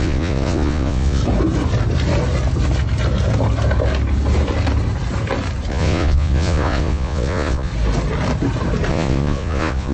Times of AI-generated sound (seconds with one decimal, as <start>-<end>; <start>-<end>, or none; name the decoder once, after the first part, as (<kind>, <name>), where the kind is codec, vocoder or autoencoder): 0.0-1.2 (vocoder, Vocos); 5.7-7.7; 8.9-9.9